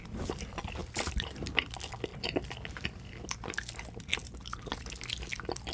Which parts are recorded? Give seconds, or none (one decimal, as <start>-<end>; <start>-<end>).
0.0-0.8; 1.5-5.7

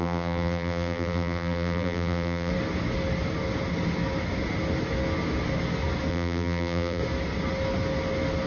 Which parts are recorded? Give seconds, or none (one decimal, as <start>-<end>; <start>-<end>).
2.5-6.1; 7.0-8.5

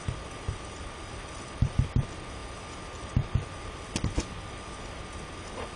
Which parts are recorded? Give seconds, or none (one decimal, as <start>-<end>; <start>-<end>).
0.0-5.8

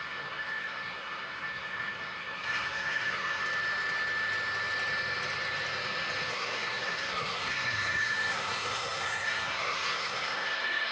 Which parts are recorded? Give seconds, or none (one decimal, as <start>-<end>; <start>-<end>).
3.4-6.3

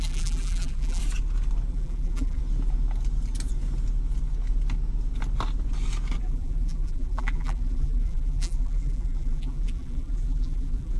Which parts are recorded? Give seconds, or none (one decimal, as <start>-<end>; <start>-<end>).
1.0-1.7; 2.4-6.2

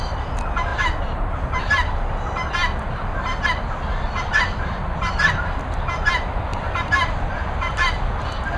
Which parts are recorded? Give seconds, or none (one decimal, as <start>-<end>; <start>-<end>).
0.0-0.7; 2.1-6.5; 7.1-8.6

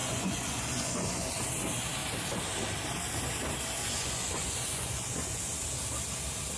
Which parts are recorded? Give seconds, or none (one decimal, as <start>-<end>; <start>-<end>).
1.3-3.8; 5.4-6.6